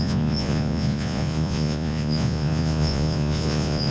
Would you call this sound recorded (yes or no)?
no